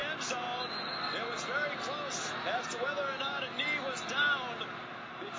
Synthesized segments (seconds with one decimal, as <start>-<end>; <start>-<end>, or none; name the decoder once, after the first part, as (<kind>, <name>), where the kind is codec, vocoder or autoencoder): none